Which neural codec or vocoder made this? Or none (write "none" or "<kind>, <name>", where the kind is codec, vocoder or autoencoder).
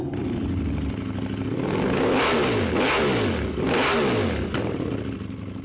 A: none